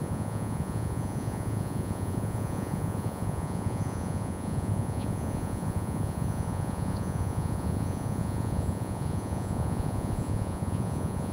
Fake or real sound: fake